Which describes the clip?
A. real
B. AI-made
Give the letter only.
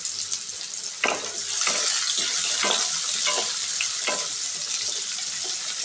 A